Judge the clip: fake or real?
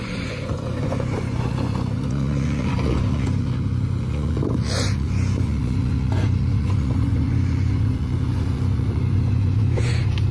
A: fake